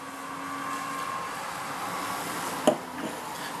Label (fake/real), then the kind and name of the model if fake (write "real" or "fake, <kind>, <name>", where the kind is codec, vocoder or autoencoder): real